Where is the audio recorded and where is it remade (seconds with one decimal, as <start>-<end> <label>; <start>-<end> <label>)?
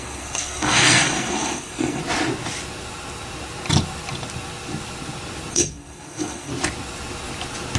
0.0-2.0 remade; 2.0-5.5 recorded; 5.5-6.5 remade; 6.5-7.8 recorded